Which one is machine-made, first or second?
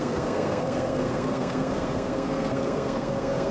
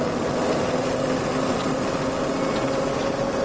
first